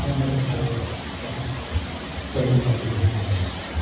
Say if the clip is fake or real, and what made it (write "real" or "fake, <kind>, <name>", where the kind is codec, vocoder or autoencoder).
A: real